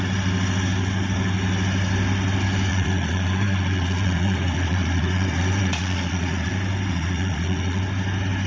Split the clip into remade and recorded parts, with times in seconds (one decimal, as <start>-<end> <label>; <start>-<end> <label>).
0.0-2.7 recorded; 2.7-6.5 remade; 6.5-6.9 recorded; 6.9-7.8 remade; 7.8-8.5 recorded